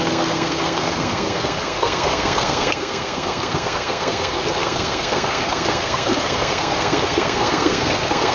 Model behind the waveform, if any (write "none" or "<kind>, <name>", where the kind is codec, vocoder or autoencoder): codec, SNAC